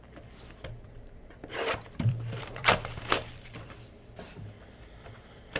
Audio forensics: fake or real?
fake